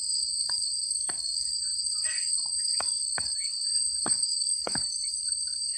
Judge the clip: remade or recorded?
remade